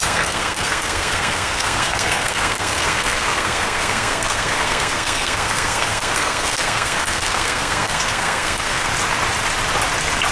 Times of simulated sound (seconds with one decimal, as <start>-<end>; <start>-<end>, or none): 0.0-8.9